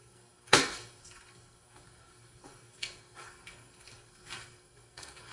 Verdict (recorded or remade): remade